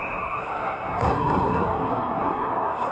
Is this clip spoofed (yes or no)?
yes